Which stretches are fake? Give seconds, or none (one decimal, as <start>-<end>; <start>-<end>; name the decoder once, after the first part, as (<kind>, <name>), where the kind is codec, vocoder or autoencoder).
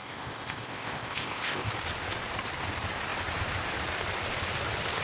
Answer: 0.0-1.7 (codec, ZipCodec)